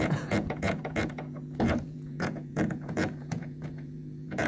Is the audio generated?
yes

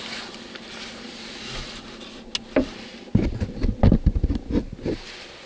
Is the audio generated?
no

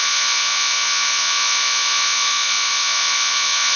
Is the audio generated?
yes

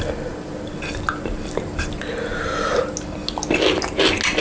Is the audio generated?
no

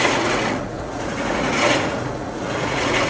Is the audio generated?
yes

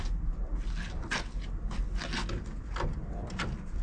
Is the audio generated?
no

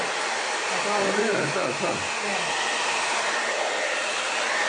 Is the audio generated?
no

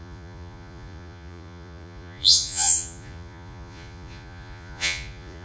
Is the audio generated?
yes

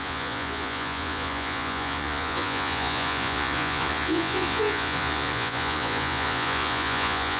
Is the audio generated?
yes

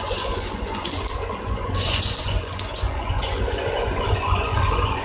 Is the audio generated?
yes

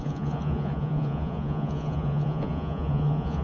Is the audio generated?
yes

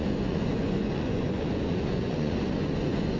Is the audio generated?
yes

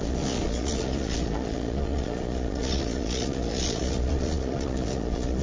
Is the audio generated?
yes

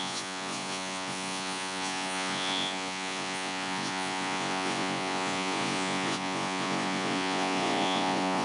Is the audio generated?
yes